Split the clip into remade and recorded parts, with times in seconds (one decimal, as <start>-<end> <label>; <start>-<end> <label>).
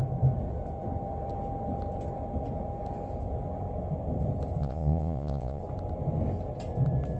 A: 0.0-4.6 recorded; 4.6-5.6 remade; 5.6-7.2 recorded